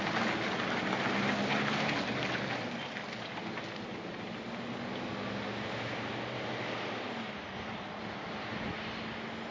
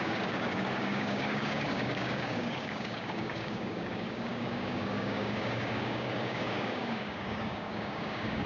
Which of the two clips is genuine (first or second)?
first